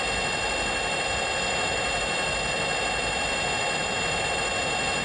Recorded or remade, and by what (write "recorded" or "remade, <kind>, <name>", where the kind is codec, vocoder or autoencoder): recorded